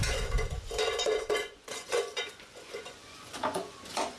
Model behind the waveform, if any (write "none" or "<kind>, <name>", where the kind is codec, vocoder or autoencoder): vocoder, Vocos